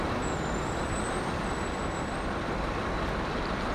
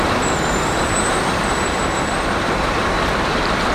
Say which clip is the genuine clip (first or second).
first